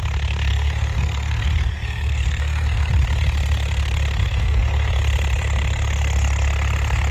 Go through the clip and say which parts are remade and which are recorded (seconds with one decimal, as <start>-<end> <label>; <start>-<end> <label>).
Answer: 0.0-0.5 recorded; 0.5-2.9 remade; 2.9-4.2 recorded; 4.2-4.9 remade; 4.9-7.1 recorded